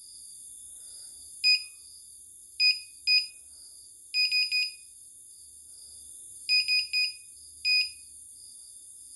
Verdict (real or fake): real